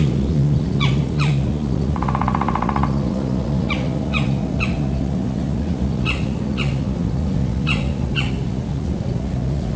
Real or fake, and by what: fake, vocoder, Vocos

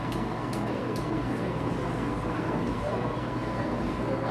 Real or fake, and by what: fake, codec, SNAC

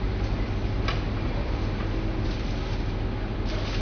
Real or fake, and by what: real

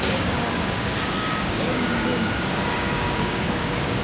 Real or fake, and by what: fake, codec, DAC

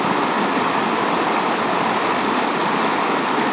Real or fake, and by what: real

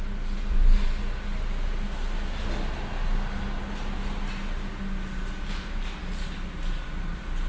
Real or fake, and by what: real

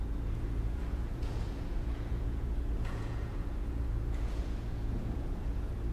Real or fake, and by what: fake, vocoder, Vocos